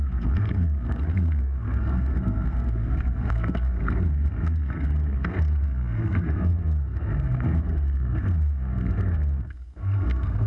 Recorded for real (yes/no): no